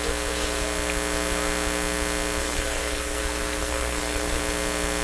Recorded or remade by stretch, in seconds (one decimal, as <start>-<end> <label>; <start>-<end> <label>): 0.0-2.4 recorded; 2.4-3.2 remade; 3.2-3.6 recorded; 3.6-4.4 remade; 4.4-5.0 recorded